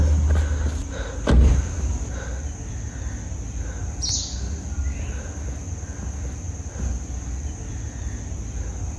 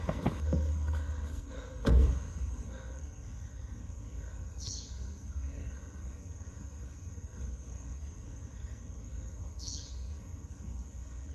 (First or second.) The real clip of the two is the first